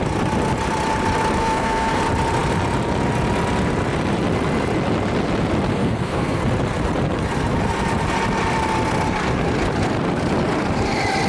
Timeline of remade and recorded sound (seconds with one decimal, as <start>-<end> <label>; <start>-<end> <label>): 0.0-1.4 recorded; 1.4-2.0 remade; 2.0-5.7 recorded; 5.7-6.4 remade; 6.4-11.3 recorded